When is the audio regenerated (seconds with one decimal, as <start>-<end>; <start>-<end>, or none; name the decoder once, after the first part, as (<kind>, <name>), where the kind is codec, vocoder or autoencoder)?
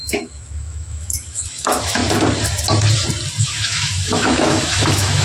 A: 0.0-2.0 (autoencoder, DAC-VAE); 3.4-5.2